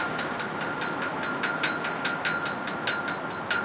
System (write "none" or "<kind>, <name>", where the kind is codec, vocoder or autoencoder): none